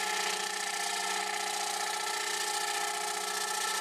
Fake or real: real